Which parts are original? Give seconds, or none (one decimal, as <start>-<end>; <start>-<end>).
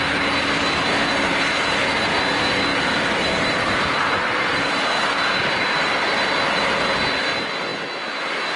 0.0-2.7; 4.7-8.6